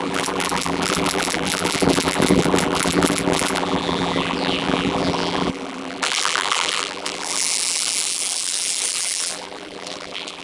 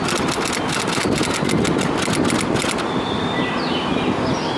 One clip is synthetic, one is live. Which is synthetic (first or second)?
first